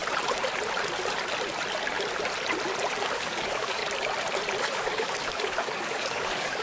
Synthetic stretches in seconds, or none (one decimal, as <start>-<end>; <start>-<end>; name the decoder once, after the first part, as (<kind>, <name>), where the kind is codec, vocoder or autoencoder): 3.0-3.8 (codec, DAC); 4.6-6.6